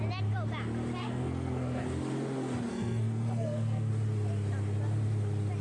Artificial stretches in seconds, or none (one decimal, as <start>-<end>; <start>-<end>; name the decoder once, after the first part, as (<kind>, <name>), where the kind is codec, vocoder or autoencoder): 1.0-1.8 (codec, SNAC); 2.7-3.9